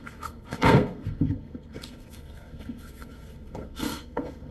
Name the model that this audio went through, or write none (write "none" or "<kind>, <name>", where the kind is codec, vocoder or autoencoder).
codec, SNAC